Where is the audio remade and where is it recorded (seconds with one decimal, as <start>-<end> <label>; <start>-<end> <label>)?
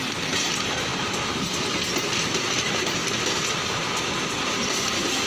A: 0.0-5.3 recorded